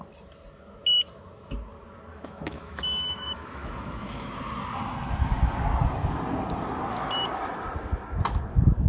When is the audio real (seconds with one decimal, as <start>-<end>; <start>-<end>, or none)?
0.0-2.1; 4.4-8.9